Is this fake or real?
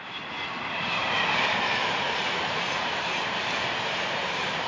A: fake